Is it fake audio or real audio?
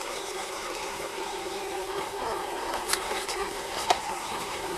fake